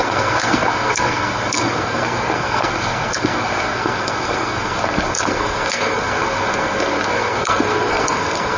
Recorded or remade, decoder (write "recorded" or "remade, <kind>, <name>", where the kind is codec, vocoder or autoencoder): remade, codec, SNAC